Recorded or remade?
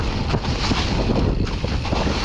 recorded